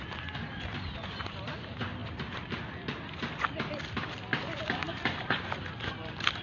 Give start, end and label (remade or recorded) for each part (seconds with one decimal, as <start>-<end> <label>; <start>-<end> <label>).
0.0-6.4 recorded